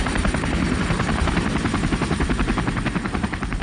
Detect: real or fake fake